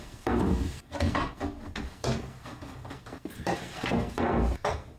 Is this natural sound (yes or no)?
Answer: no